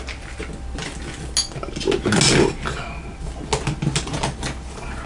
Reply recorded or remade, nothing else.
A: recorded